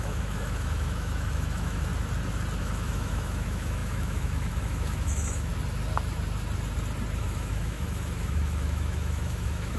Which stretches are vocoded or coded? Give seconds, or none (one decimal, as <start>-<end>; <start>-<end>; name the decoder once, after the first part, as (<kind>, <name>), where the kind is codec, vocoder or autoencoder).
0.0-1.9 (autoencoder, DAC-VAE); 2.6-5.5; 7.2-9.8